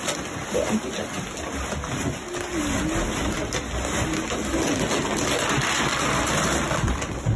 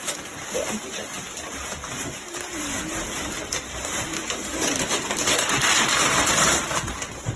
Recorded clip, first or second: first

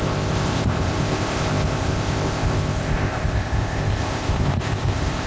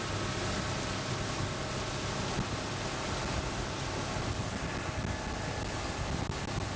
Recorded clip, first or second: second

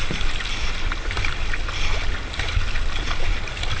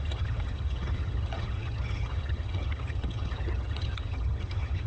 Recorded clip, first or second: first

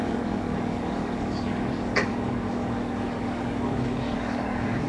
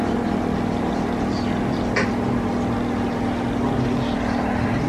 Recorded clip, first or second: second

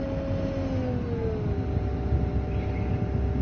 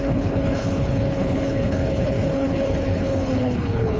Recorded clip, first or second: first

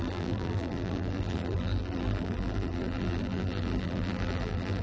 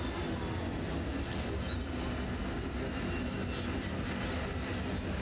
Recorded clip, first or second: second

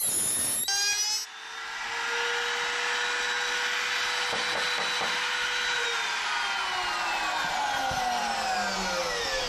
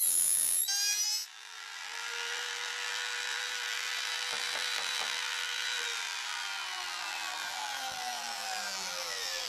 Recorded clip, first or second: first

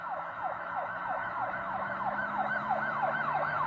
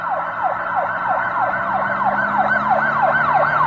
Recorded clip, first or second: second